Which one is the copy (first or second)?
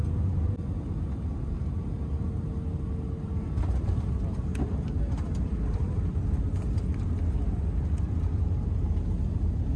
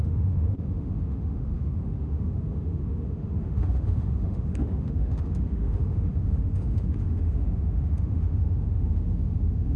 second